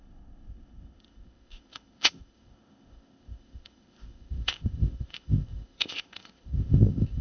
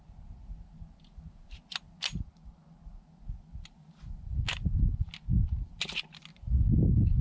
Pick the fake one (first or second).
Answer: first